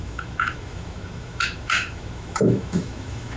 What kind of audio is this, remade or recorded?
remade